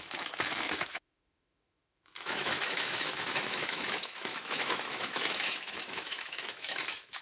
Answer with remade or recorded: remade